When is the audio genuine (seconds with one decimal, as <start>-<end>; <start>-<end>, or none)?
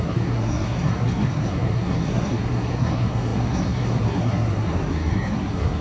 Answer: none